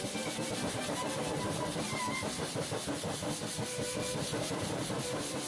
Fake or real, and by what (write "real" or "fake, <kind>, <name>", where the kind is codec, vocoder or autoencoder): fake, vocoder, BigVGAN v2